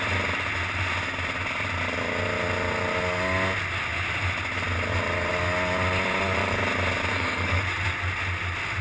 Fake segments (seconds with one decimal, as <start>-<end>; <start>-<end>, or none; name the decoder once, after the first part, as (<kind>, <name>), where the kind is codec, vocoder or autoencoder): 7.1-7.6 (codec, SNAC)